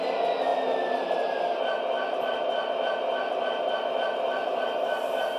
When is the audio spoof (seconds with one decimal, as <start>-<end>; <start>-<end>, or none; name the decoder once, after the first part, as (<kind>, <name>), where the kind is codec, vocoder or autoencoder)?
none